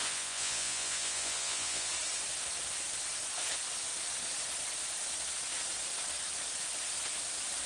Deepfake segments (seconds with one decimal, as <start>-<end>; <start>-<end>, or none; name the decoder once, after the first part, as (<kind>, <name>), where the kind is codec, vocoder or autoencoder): 0.0-1.9 (vocoder, Vocos)

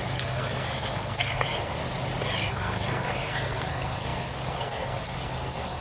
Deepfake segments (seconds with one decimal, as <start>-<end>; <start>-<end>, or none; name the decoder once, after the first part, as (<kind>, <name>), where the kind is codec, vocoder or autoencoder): 0.0-1.8 (codec, SNAC); 2.5-5.8

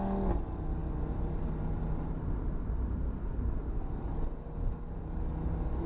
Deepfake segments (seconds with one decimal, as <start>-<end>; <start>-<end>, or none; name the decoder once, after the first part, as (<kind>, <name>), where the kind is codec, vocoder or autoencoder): none

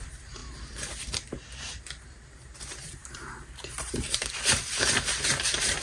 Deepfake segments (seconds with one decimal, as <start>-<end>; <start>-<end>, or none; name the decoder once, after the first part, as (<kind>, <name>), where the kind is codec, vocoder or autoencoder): 0.0-0.4 (vocoder, BigVGAN v2); 1.6-5.8

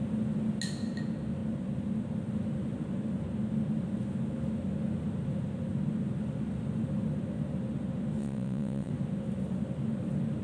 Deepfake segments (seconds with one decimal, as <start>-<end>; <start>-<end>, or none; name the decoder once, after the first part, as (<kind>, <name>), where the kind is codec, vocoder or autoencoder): 8.2-8.9 (vocoder, WaveNeXt)

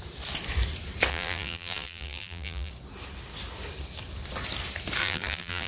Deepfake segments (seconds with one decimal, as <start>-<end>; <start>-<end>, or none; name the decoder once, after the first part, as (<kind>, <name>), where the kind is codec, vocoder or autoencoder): 1.1-2.7 (vocoder, BigVGAN v2); 5.0-5.7

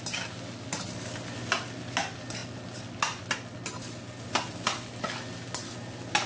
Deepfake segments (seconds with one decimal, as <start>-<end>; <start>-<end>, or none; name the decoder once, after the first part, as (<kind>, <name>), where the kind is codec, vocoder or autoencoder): none